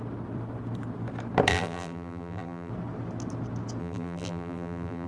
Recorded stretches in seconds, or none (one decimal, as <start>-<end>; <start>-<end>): 0.0-1.5; 2.7-3.8